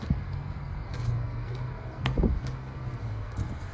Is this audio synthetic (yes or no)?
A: yes